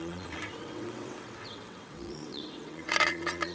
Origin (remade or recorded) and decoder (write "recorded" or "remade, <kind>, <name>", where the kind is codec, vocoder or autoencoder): remade, vocoder, WaveNeXt